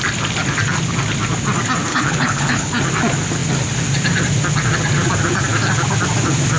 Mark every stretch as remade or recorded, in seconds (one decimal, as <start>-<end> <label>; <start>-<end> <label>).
0.0-1.9 recorded; 1.9-2.7 remade; 2.7-6.6 recorded